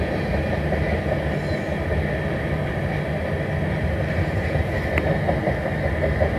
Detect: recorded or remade recorded